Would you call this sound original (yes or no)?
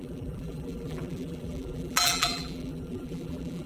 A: no